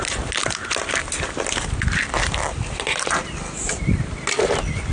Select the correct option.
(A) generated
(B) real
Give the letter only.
B